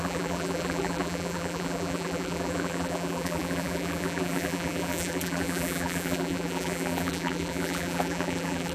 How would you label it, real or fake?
fake